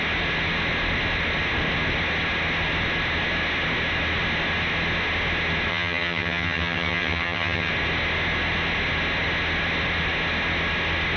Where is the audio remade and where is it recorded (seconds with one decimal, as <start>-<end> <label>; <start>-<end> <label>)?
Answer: 0.0-5.7 recorded; 5.7-7.7 remade; 7.7-11.2 recorded